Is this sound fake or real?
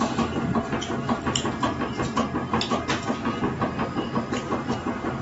real